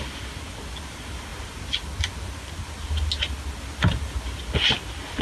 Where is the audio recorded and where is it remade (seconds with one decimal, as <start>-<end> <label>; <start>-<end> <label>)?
0.0-5.2 recorded